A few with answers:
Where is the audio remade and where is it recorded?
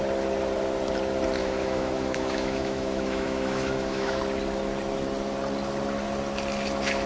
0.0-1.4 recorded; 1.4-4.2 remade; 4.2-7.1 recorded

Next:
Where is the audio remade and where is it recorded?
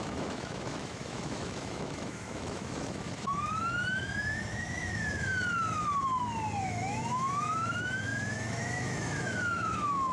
0.0-5.3 remade; 5.3-6.6 recorded; 6.6-10.1 remade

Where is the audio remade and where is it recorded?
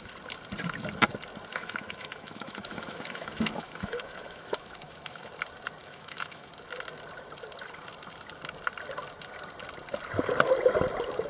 0.0-1.5 recorded; 1.5-5.3 remade; 5.3-5.8 recorded; 5.8-6.5 remade; 6.5-11.3 recorded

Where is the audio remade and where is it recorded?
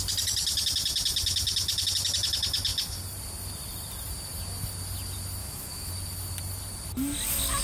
0.0-5.4 recorded; 5.4-5.9 remade; 5.9-7.6 recorded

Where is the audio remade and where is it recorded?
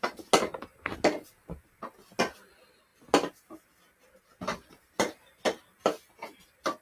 0.0-6.8 recorded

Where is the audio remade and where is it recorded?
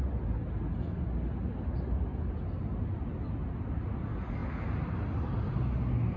0.0-6.2 recorded